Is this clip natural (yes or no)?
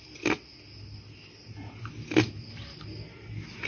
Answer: yes